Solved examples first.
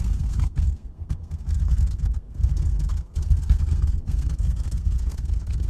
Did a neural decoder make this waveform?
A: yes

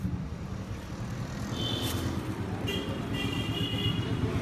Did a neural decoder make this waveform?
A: no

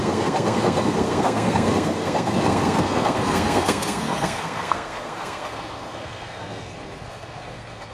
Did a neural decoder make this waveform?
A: yes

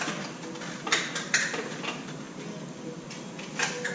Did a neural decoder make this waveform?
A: no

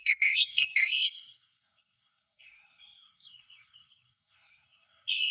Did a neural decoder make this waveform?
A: yes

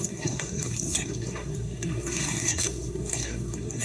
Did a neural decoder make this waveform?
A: yes